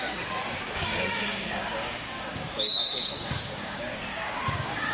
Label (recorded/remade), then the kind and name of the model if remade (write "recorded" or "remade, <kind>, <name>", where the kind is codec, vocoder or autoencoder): remade, codec, DAC